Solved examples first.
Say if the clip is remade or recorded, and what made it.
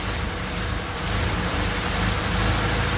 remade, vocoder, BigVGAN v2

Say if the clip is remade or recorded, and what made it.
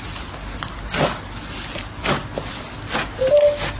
recorded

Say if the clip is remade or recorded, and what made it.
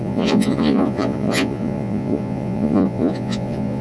remade, vocoder, Vocos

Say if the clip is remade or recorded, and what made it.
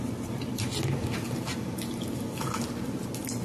recorded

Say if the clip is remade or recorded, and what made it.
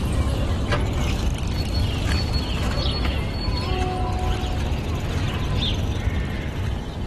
recorded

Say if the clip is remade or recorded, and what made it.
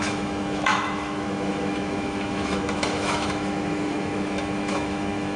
remade, autoencoder, DAC-VAE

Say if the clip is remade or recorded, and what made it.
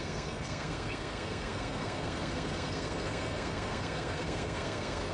remade, codec, SNAC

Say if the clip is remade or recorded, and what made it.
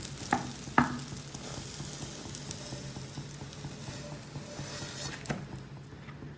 recorded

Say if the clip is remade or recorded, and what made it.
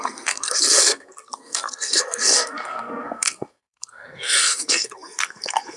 remade, codec, SNAC